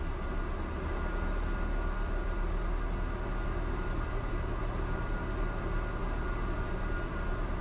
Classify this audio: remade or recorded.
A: recorded